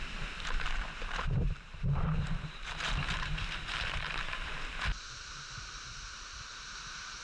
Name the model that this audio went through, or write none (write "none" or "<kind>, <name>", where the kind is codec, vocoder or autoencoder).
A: vocoder, BigVGAN v2